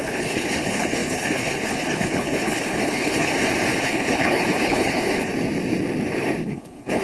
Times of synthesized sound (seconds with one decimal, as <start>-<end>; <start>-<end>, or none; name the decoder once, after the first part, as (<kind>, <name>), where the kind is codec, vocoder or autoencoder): 0.0-3.3 (codec, HILCodec); 3.8-5.3; 6.4-7.0